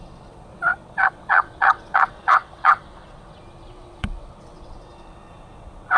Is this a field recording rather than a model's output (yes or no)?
no